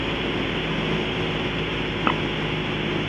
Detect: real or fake real